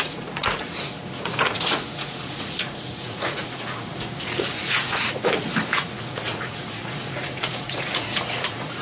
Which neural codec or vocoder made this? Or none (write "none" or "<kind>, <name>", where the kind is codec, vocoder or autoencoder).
vocoder, Vocos